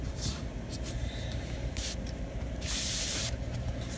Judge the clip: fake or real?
fake